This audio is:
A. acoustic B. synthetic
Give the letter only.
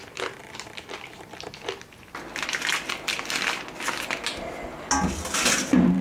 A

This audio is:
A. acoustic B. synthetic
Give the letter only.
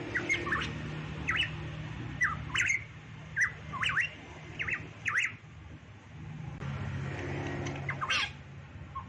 A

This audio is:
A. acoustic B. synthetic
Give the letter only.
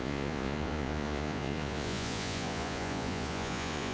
B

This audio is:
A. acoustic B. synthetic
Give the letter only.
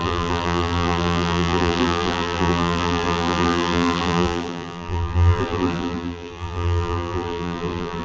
B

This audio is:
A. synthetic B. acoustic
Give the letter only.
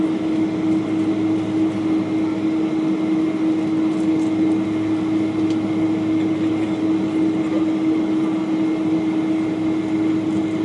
B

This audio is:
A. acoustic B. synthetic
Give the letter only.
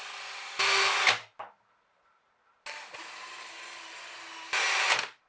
A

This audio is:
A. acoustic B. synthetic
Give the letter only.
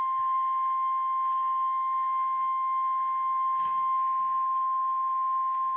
B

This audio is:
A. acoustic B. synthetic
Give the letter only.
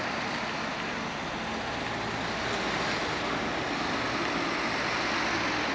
A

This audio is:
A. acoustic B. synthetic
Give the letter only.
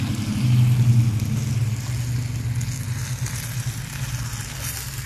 A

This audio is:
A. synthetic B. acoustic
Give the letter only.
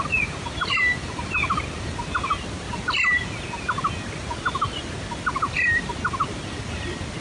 B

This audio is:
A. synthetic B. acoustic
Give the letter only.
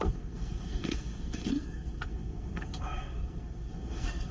A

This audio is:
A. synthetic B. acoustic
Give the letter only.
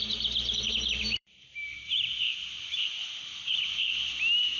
A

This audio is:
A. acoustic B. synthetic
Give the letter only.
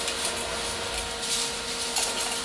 A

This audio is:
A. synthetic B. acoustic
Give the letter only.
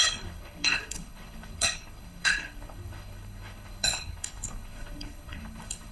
A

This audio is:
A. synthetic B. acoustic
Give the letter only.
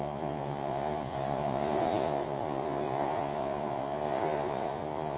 A